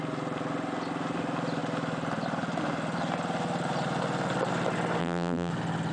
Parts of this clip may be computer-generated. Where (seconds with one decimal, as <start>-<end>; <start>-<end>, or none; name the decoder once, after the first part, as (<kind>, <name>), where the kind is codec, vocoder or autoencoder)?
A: 5.0-5.5 (vocoder, BigVGAN v2)